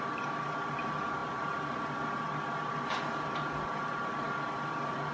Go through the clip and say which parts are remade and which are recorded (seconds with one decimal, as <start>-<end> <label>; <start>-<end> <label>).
0.0-5.1 recorded